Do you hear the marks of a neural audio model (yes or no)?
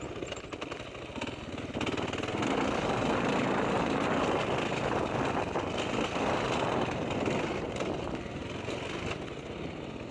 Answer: no